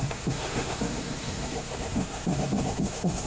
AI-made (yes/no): yes